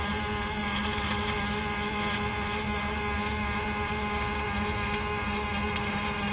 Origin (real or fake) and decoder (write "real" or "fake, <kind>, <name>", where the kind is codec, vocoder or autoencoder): real